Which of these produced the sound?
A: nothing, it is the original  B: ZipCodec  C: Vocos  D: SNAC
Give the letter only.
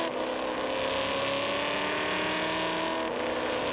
A